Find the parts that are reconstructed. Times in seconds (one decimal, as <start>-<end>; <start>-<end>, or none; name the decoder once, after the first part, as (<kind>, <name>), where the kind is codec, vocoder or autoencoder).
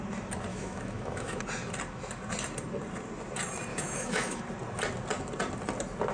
0.5-1.4 (autoencoder, DAC-VAE); 3.7-4.4